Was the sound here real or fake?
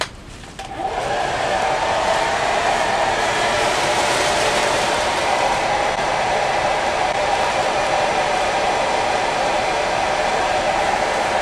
fake